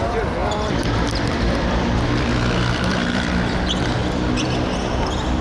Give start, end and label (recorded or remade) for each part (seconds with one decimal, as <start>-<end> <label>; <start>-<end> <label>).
0.0-0.4 recorded; 0.4-2.3 remade; 2.3-2.9 recorded; 2.9-3.6 remade; 3.6-4.0 recorded; 4.0-5.0 remade; 5.0-5.4 recorded